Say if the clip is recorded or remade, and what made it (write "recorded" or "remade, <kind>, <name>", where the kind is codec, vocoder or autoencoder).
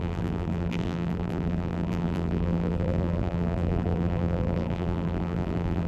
remade, vocoder, BigVGAN v2